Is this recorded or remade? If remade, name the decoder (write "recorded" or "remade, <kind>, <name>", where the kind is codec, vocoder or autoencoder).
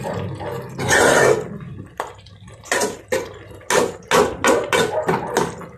recorded